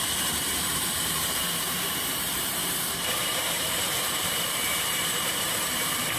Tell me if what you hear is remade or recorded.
remade